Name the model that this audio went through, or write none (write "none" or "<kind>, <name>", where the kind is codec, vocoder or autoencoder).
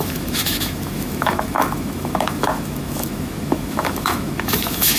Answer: autoencoder, DAC-VAE